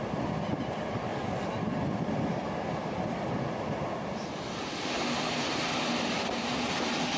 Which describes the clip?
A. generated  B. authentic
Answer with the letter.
B